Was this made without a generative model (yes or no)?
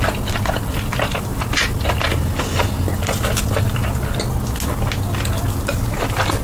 yes